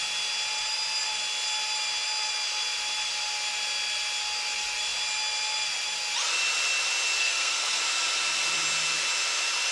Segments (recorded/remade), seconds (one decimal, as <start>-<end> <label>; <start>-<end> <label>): 0.0-7.2 recorded; 7.2-7.8 remade; 7.8-9.7 recorded